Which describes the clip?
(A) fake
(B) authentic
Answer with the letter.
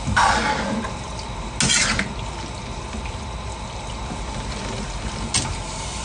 B